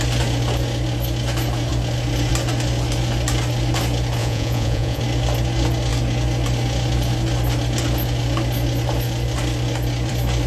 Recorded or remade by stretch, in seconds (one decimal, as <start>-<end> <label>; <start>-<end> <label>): 0.0-4.2 recorded; 4.2-5.0 remade; 5.0-10.5 recorded